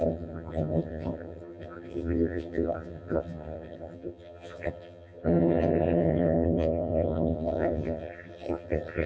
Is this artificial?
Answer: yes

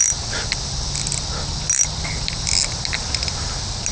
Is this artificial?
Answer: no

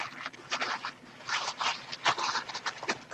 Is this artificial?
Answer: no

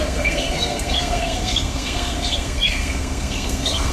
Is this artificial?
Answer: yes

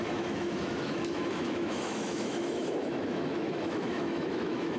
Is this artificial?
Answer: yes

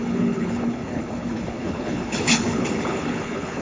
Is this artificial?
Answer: yes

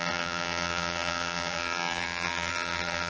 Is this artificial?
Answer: yes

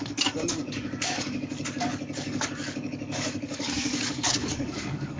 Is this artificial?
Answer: yes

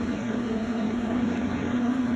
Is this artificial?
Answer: yes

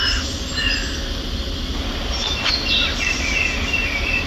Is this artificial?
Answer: no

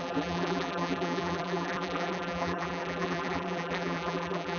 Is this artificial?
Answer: yes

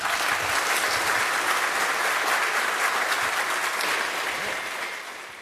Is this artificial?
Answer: no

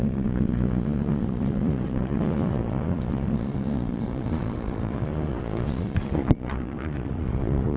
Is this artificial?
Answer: yes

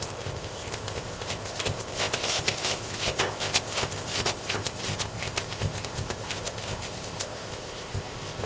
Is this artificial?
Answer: yes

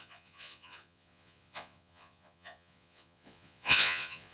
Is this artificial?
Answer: yes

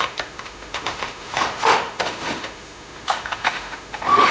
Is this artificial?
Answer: yes